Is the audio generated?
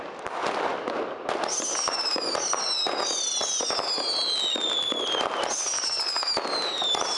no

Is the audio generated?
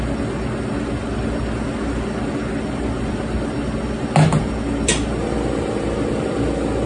no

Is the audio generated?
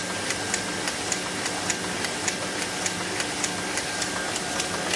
no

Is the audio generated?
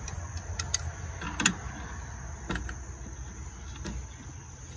no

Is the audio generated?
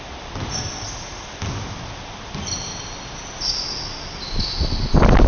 no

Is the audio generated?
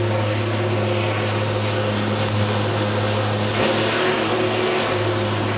no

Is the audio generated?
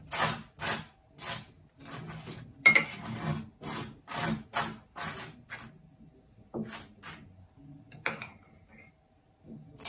no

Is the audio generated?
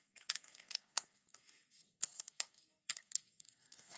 yes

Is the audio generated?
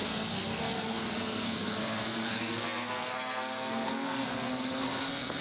yes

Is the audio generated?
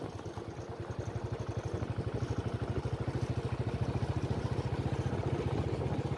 no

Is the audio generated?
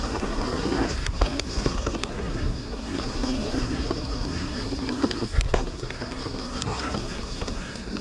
yes